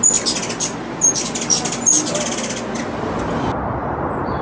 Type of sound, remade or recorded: recorded